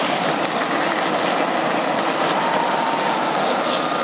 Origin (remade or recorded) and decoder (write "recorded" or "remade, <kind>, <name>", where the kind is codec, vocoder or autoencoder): recorded